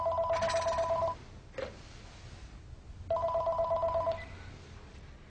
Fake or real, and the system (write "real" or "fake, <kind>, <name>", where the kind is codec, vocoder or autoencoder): real